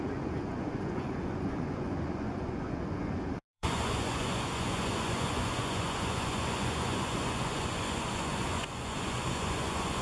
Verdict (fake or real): fake